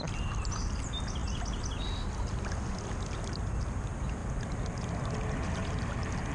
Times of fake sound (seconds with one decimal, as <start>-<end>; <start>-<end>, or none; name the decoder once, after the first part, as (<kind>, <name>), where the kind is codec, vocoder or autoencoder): none